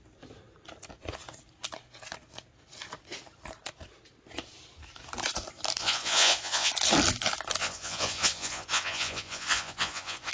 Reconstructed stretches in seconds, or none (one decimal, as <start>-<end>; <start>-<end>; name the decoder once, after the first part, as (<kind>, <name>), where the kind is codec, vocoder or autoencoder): 5.8-6.7 (vocoder, Vocos); 7.6-10.3